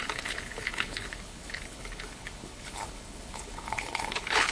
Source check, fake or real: fake